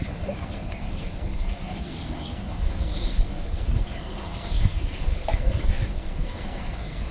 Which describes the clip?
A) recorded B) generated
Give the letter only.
B